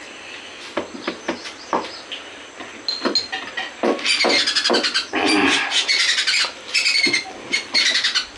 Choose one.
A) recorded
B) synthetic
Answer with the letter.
A